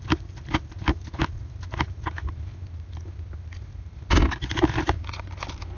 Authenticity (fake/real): real